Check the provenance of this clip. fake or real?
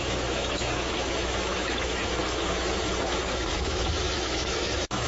fake